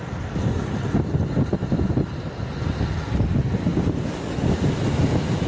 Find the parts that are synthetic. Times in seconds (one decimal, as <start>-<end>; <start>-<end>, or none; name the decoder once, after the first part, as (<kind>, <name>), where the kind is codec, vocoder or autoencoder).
none

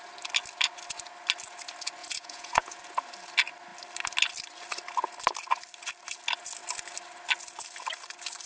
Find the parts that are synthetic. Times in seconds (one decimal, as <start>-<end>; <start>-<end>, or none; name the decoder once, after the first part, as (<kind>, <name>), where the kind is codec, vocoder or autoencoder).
2.0-2.8 (vocoder, Vocos)

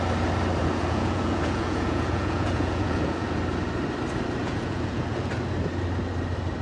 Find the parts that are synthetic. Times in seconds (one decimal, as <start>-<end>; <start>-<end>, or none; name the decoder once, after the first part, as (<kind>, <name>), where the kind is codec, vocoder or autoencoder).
0.6-3.4 (vocoder, Vocos); 4.4-5.3

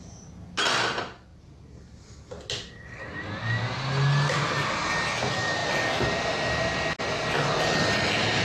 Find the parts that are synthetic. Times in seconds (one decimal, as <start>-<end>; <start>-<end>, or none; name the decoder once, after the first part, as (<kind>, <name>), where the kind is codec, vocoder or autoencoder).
none

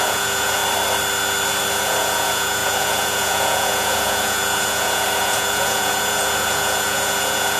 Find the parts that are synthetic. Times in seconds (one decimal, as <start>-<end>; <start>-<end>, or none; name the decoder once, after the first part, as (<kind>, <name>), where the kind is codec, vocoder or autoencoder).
0.0-0.6 (vocoder, Vocos); 1.7-7.6

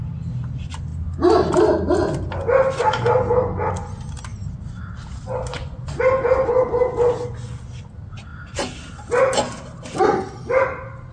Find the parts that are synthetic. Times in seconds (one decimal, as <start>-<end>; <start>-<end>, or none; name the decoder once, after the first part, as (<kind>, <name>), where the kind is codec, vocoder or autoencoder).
5.5-6.0 (vocoder, Vocos)